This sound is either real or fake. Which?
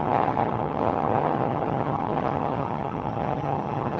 fake